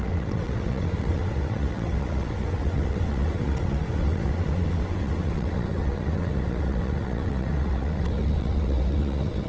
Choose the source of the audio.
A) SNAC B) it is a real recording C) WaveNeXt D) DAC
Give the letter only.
C